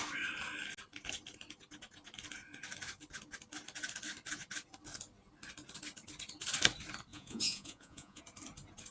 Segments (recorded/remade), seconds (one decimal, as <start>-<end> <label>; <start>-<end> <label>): 0.0-7.1 recorded; 7.1-8.2 remade; 8.2-8.9 recorded